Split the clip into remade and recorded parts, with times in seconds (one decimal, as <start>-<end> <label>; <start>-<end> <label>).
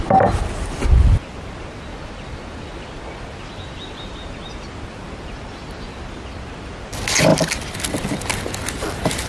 0.0-9.3 recorded